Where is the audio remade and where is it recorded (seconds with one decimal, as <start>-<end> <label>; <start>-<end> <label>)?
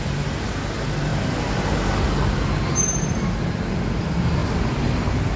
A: 0.0-2.7 recorded; 2.7-4.0 remade; 4.0-5.4 recorded